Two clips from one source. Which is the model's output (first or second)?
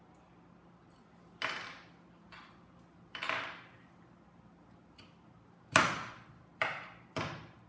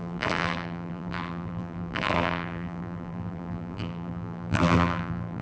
second